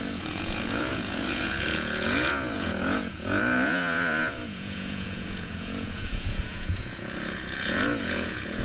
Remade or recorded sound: remade